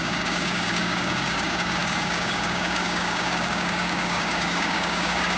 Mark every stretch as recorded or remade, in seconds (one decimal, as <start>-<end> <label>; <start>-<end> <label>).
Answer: 0.0-5.4 remade

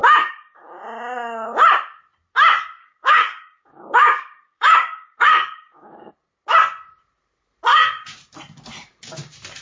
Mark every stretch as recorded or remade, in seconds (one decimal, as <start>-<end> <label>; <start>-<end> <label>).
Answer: 0.0-0.8 remade; 0.8-2.8 recorded; 2.8-6.1 remade; 6.1-7.7 recorded; 7.7-8.2 remade; 8.2-9.6 recorded

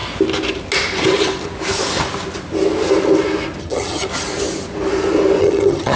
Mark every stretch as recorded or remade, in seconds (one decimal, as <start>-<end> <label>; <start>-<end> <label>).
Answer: 0.0-3.6 recorded; 3.6-4.1 remade; 4.1-5.4 recorded; 5.4-6.0 remade

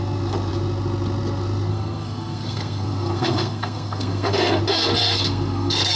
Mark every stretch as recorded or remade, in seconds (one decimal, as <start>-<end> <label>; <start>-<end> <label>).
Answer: 0.0-1.7 recorded; 1.7-4.6 remade; 4.6-5.0 recorded; 5.0-6.0 remade